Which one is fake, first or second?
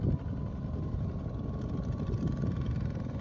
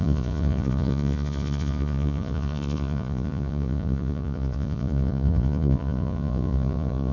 second